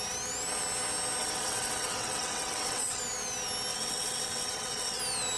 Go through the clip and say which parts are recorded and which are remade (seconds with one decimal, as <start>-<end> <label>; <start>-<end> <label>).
0.0-1.2 recorded; 1.2-3.0 remade; 3.0-3.7 recorded; 3.7-5.0 remade; 5.0-5.4 recorded